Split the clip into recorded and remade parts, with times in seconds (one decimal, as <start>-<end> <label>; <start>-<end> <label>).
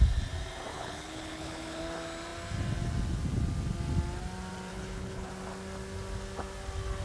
0.0-0.7 recorded; 0.7-1.8 remade; 1.8-4.7 recorded; 4.7-5.3 remade; 5.3-7.0 recorded